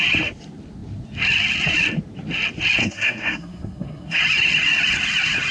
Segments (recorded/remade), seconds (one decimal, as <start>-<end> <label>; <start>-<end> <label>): 0.0-2.8 recorded; 2.8-4.2 remade; 4.2-5.5 recorded